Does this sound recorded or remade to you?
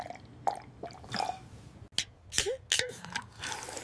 recorded